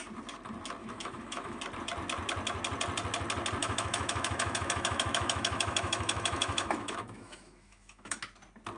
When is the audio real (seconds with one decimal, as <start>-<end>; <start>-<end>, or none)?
0.0-0.8; 1.6-3.6; 8.2-8.8